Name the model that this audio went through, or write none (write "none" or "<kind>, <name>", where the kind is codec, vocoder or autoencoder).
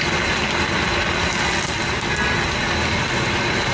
none